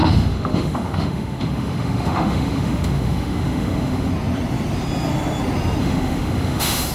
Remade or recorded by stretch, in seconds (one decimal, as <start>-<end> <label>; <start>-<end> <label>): 0.0-4.1 remade; 4.1-5.8 recorded; 5.8-6.9 remade